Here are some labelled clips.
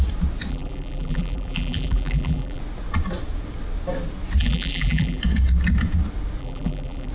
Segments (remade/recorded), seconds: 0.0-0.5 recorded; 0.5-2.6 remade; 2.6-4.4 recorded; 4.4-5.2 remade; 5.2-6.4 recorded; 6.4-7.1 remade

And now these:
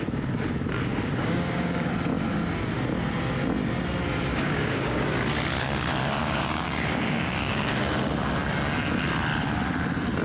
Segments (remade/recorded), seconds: 0.0-0.9 recorded; 0.9-1.9 remade; 1.9-4.3 recorded; 4.3-5.0 remade; 5.0-6.2 recorded; 6.2-7.7 remade; 7.7-10.2 recorded